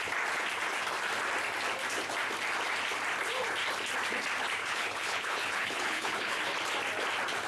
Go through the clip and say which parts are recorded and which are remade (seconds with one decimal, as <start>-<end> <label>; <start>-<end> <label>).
0.0-4.6 recorded; 4.6-6.4 remade; 6.4-7.5 recorded